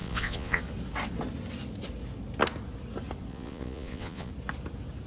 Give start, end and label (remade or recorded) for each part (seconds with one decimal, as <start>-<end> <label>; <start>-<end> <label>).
0.0-0.6 remade; 0.6-3.3 recorded; 3.3-4.3 remade; 4.3-5.1 recorded